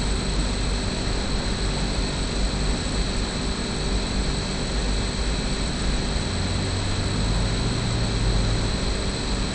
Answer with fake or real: real